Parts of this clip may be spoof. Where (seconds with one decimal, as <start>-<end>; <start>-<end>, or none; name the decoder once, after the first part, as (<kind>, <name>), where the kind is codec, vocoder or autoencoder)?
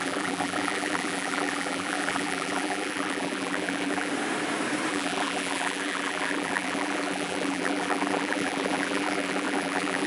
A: 0.0-4.1 (vocoder, BigVGAN v2); 4.9-10.1